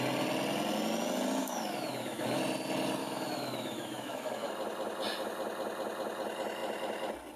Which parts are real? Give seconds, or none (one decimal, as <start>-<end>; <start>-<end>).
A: 0.0-1.4; 2.4-3.0; 4.5-7.4

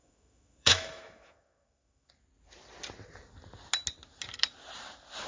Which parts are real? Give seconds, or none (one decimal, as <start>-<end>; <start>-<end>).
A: 2.1-5.3

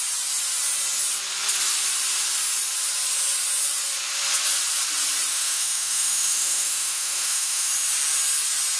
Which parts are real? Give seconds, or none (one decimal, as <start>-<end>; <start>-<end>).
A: 0.0-5.3; 7.7-8.8

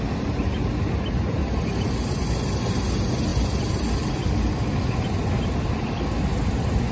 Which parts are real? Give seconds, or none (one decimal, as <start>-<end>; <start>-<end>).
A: 0.0-6.9